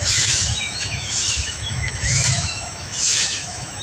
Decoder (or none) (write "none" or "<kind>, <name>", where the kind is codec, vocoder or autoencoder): autoencoder, DAC-VAE